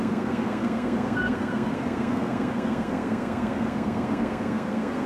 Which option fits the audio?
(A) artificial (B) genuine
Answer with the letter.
A